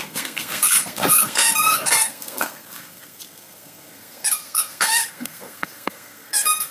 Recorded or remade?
remade